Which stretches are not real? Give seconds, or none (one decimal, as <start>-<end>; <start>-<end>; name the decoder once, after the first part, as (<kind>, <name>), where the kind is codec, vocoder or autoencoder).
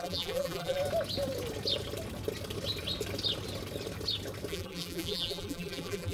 0.0-0.8 (vocoder, BigVGAN v2); 4.5-6.1